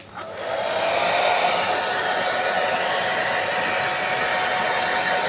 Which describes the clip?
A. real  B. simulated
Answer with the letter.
A